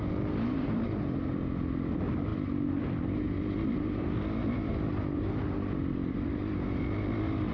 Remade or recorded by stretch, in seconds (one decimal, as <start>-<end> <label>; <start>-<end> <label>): 0.0-7.5 recorded